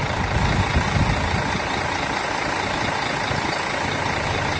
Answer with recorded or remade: recorded